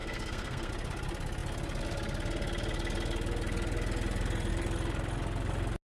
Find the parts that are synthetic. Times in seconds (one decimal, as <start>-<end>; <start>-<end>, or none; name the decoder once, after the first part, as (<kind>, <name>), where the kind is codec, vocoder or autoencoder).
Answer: 0.0-0.7 (codec, SNAC)